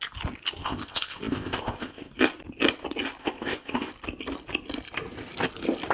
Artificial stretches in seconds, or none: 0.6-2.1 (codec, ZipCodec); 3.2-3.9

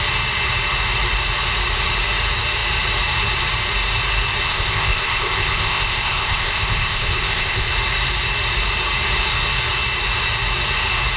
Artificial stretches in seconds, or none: 4.5-7.7 (codec, ZipCodec)

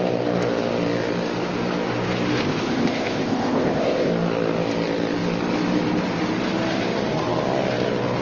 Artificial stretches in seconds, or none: 2.4-4.1 (codec, ZipCodec)

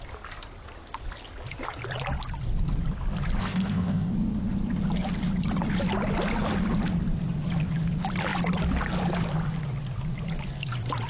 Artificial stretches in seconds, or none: 3.4-4.1 (codec, ZipCodec)